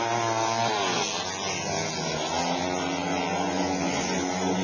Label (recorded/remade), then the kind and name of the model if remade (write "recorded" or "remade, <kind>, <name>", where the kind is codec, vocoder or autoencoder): recorded